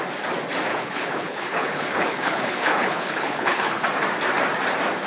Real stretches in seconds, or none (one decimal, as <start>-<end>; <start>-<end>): 0.0-0.7; 3.8-5.1